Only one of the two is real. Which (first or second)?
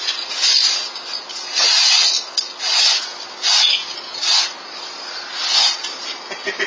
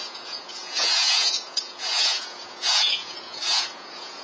first